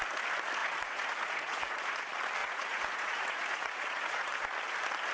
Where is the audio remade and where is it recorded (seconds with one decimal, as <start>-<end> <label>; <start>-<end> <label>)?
0.0-0.6 recorded; 0.6-2.0 remade; 2.0-2.4 recorded; 2.4-4.3 remade; 4.3-5.1 recorded